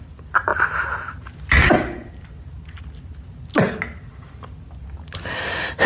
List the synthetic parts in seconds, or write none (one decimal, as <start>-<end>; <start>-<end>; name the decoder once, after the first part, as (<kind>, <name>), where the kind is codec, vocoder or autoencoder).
none